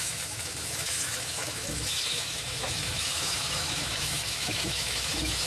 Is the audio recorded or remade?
remade